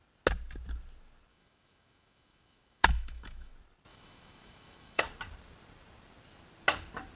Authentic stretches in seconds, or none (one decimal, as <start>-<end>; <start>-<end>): 0.0-1.3; 3.5-3.9; 5.0-7.2